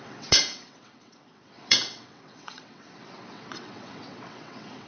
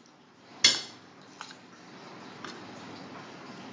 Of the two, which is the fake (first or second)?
first